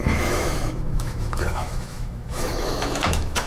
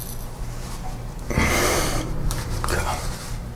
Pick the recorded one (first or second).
second